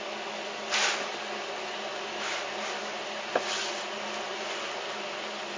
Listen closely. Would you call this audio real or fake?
real